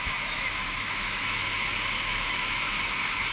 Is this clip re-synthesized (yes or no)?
yes